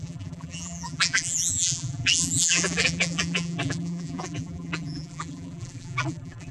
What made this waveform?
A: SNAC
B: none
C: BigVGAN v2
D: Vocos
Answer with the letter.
C